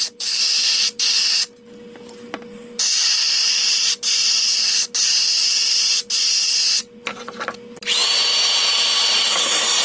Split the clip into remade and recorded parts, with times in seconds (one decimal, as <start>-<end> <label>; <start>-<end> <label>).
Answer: 0.0-8.0 remade; 8.0-8.7 recorded; 8.7-9.8 remade

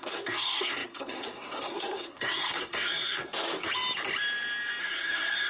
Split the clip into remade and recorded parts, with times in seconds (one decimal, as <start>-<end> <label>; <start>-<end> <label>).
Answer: 0.0-3.2 remade; 3.2-4.8 recorded; 4.8-5.5 remade